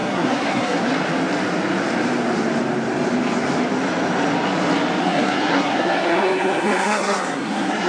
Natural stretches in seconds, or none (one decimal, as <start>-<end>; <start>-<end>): 0.9-5.0

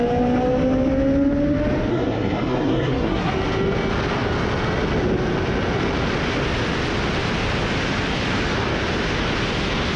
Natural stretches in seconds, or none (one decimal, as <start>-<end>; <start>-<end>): 0.0-1.9; 3.3-10.0

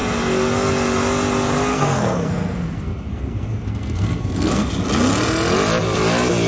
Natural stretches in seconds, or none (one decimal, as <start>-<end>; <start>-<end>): 0.0-1.7; 4.7-6.5

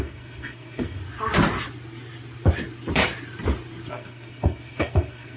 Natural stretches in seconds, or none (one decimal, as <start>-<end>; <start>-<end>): 1.0-3.9